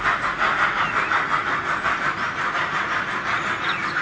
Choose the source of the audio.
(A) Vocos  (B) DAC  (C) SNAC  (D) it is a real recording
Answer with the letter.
D